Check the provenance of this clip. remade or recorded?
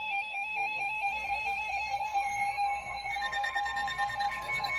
remade